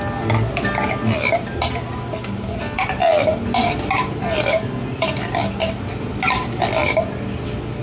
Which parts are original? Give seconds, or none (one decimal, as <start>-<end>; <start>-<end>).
0.0-7.8